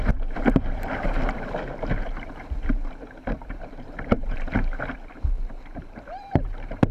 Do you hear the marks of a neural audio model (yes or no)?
yes